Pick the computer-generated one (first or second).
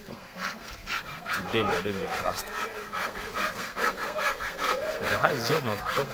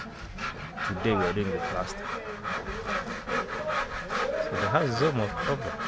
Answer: first